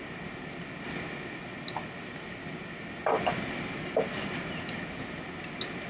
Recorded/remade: recorded